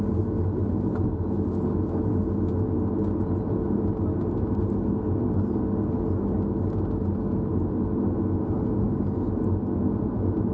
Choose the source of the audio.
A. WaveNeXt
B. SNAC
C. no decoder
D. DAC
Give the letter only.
C